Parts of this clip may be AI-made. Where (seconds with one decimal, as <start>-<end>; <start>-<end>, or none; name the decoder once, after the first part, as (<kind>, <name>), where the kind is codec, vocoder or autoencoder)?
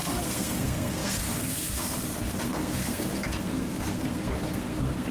0.0-5.1 (codec, SNAC)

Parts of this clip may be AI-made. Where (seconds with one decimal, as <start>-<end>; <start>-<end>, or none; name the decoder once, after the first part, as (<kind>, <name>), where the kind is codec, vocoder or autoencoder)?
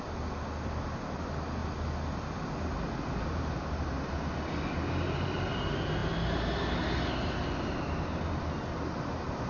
none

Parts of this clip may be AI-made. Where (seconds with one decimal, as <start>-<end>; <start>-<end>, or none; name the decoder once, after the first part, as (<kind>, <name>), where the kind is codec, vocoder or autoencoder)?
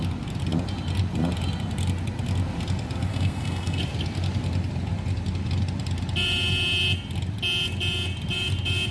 3.1-3.8 (codec, SNAC)